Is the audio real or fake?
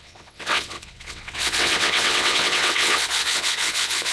fake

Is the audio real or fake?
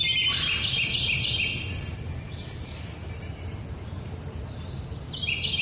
real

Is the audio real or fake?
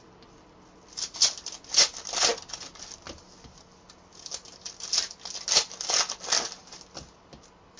real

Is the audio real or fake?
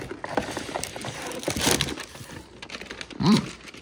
real